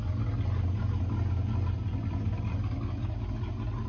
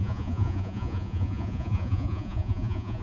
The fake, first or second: second